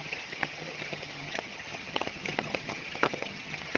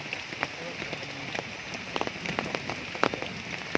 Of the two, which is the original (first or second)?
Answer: second